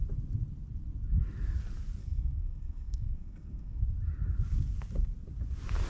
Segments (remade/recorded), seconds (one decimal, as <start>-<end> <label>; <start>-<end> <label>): 0.0-2.0 recorded; 2.0-3.8 remade; 3.8-5.9 recorded